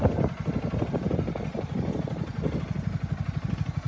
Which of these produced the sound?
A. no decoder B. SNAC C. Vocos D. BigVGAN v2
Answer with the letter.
A